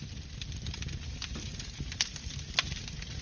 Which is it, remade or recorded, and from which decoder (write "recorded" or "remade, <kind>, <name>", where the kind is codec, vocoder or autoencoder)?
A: recorded